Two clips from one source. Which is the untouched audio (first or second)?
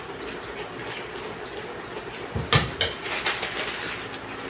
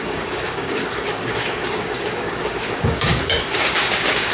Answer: first